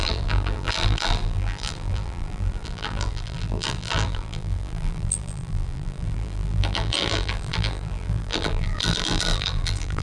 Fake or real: fake